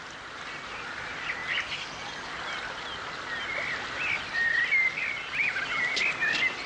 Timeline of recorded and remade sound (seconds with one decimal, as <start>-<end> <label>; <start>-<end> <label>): 0.0-6.7 recorded